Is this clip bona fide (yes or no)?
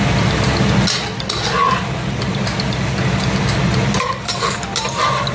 yes